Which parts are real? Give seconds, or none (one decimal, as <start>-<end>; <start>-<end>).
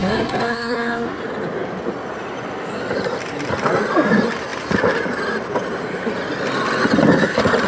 1.2-7.7